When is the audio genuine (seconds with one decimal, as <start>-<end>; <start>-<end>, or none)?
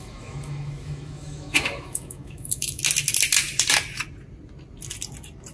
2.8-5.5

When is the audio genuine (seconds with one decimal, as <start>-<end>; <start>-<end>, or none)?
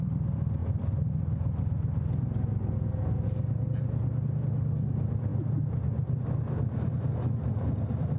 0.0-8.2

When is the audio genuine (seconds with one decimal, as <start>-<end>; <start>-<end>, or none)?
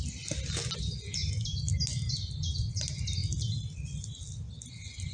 0.0-5.1